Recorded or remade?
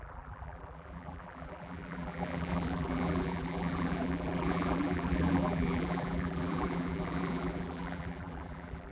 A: remade